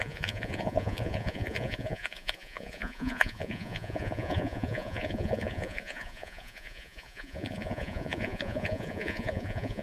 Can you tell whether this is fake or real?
fake